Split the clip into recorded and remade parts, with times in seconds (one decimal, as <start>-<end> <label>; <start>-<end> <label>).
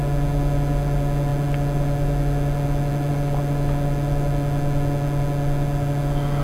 0.0-6.4 recorded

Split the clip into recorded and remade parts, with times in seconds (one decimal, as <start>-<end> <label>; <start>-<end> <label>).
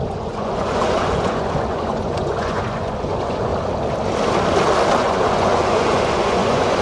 0.0-3.5 remade; 3.5-5.0 recorded; 5.0-6.8 remade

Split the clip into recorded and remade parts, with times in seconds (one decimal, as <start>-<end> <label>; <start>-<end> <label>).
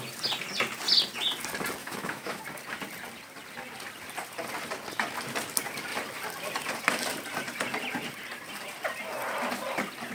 0.0-1.8 recorded; 1.8-2.4 remade; 2.4-10.1 recorded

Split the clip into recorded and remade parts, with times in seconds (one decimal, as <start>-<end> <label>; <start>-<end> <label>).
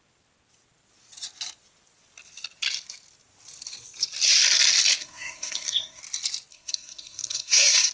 0.0-5.0 recorded; 5.0-6.0 remade; 6.0-6.5 recorded; 6.5-7.9 remade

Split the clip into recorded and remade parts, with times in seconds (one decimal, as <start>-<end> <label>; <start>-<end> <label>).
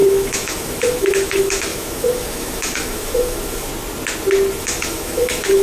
0.0-3.7 remade; 3.7-4.6 recorded; 4.6-5.6 remade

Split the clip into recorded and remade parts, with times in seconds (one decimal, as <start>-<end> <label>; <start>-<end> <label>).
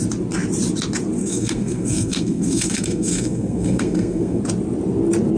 0.0-1.2 recorded; 1.2-4.4 remade; 4.4-5.4 recorded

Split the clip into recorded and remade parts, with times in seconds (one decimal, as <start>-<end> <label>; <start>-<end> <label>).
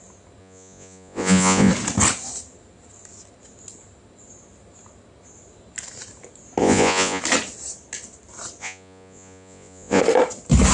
0.0-0.4 recorded; 0.4-1.7 remade; 1.7-6.6 recorded; 6.6-7.2 remade; 7.2-8.6 recorded; 8.6-10.0 remade; 10.0-10.7 recorded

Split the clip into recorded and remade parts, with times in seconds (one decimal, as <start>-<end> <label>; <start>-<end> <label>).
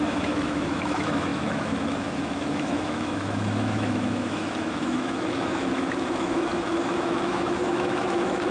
0.0-8.5 remade